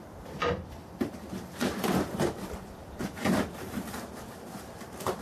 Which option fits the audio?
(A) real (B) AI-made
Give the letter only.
B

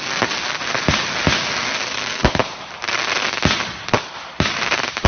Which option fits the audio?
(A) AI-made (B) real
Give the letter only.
B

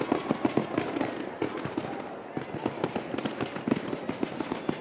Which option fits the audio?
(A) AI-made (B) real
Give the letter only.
B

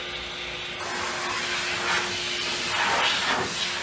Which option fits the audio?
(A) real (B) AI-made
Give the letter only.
A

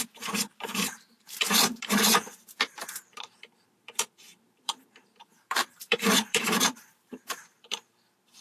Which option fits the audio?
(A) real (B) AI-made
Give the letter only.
B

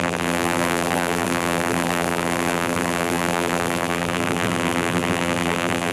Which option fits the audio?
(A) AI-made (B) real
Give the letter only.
A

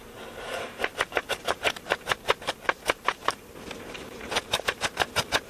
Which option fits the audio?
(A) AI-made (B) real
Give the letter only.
A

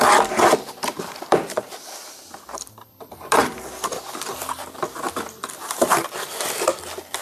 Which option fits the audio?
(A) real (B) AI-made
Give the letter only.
B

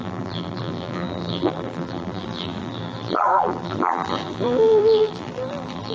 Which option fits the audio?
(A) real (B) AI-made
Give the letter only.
B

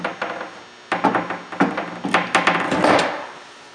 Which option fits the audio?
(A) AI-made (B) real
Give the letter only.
B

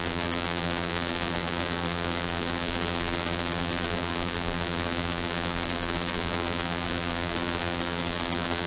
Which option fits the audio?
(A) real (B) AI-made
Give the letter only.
B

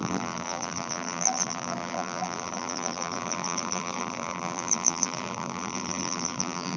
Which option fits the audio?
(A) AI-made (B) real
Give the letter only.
A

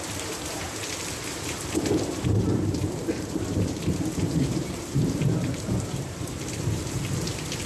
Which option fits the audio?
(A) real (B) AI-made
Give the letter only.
B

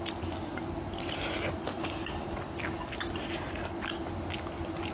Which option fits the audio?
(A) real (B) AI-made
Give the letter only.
A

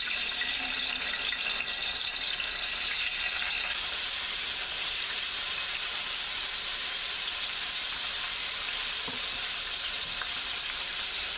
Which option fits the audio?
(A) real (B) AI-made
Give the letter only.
B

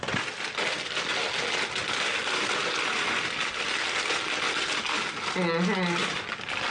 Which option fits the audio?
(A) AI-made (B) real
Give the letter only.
B